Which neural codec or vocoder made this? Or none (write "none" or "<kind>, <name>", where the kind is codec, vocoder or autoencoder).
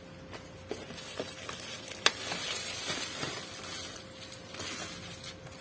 none